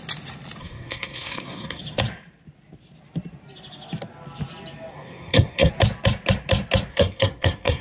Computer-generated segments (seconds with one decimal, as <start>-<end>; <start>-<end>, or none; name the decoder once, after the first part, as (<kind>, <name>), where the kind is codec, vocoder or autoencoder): 0.6-1.8 (codec, SNAC); 4.9-5.7; 6.9-7.8